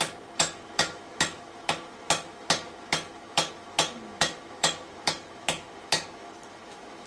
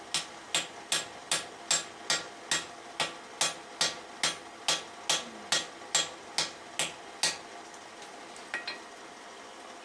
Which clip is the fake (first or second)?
first